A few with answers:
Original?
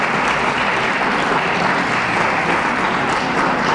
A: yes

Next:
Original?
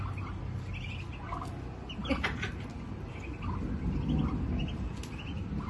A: yes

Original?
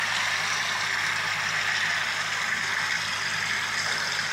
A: yes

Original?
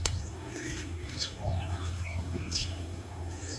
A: no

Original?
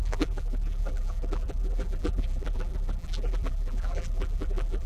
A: no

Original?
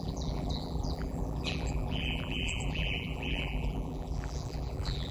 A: no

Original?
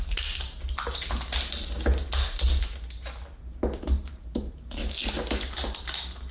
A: yes